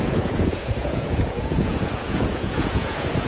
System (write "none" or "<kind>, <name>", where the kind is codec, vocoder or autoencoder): vocoder, Vocos